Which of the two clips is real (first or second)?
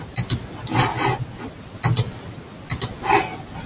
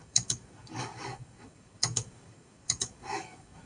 first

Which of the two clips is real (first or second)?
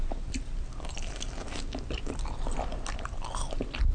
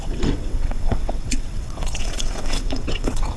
first